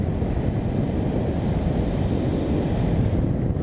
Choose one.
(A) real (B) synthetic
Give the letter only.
A